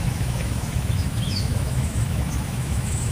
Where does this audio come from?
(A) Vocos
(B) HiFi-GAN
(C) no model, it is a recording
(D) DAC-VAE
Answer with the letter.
D